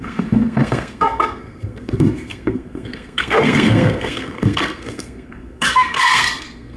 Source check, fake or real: fake